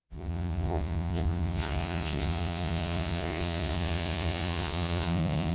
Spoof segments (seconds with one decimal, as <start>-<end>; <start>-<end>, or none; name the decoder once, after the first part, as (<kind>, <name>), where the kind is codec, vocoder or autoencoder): 0.0-5.5 (vocoder, Vocos)